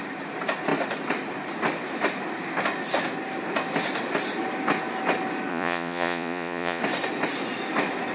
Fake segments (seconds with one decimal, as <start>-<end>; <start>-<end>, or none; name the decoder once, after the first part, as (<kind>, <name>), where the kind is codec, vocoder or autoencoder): 5.5-6.8 (vocoder, Vocos)

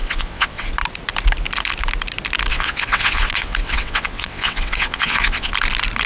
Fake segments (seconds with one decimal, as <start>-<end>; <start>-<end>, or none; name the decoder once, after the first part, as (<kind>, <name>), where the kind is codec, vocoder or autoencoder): 0.0-0.7 (vocoder, WaveNeXt); 2.5-5.5

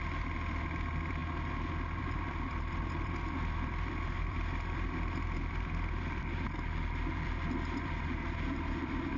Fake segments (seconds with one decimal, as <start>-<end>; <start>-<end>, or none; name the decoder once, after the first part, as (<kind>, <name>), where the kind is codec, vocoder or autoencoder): 0.0-1.2 (vocoder, BigVGAN v2); 2.0-9.2

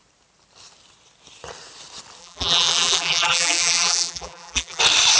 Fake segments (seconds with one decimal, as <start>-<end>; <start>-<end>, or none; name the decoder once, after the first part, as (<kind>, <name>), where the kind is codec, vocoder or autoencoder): 2.2-4.8 (vocoder, BigVGAN v2)